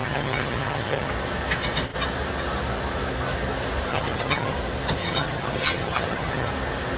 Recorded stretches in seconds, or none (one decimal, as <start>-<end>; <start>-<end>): 1.1-3.9; 4.5-5.0; 6.5-7.0